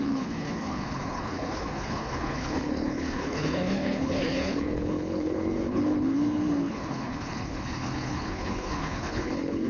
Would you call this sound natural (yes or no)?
no